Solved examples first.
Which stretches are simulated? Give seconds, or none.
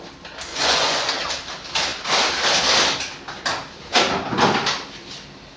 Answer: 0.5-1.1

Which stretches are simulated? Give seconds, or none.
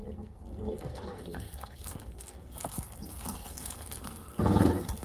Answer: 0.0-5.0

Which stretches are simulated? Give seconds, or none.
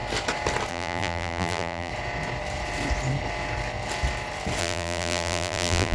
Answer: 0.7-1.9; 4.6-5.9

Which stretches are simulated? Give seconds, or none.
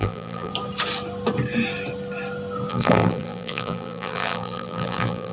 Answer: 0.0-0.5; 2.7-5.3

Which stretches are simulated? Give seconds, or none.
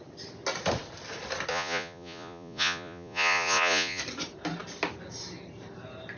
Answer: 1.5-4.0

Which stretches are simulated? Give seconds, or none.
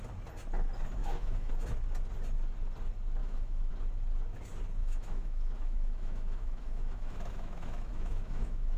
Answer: 1.0-1.5; 3.2-3.7; 4.8-8.8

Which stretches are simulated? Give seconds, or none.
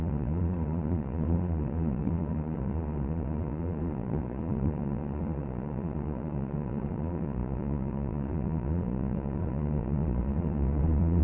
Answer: 0.0-11.2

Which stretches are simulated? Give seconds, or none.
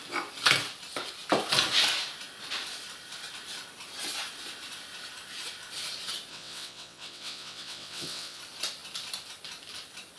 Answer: 6.3-8.4